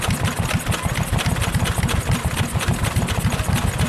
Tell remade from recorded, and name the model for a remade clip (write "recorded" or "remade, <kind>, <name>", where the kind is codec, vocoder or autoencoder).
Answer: recorded